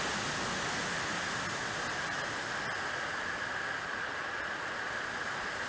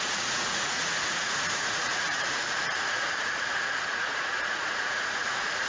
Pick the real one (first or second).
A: first